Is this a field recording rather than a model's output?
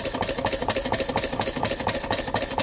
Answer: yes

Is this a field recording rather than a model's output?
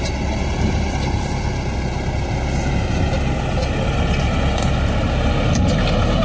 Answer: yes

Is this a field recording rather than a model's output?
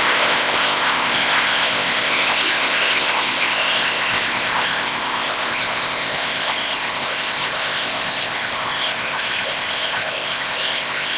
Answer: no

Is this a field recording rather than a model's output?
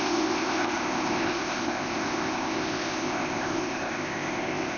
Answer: no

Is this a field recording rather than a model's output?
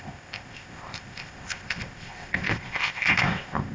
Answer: no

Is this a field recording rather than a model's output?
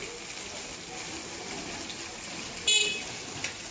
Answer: yes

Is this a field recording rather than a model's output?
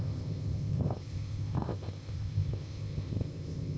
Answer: no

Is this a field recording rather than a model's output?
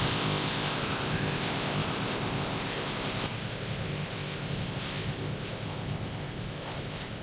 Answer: no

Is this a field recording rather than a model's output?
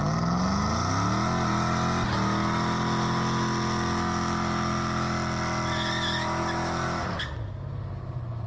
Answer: yes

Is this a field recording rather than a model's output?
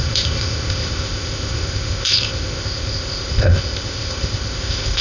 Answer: no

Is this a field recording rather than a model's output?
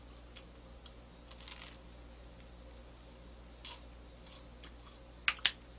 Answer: yes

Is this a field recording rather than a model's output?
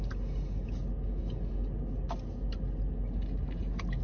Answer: yes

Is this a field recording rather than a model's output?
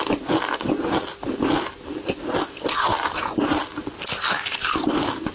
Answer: yes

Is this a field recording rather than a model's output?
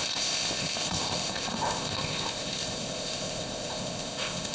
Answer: no